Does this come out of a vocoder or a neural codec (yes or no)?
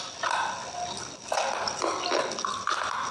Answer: no